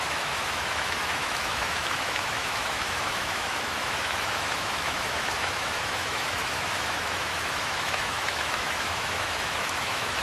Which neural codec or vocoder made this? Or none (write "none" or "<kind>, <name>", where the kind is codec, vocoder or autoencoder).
autoencoder, DAC-VAE